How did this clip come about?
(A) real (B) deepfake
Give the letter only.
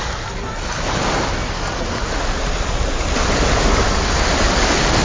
A